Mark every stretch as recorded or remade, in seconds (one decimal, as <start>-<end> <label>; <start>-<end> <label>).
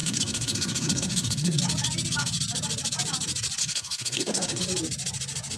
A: 0.0-1.6 remade; 1.6-3.6 recorded; 3.6-4.6 remade; 4.6-5.6 recorded